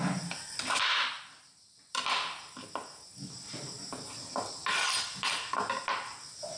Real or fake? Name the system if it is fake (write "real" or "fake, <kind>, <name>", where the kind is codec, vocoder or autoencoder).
real